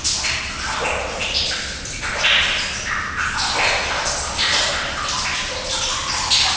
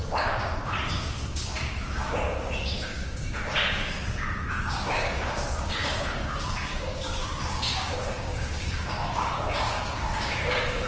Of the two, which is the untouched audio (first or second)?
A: first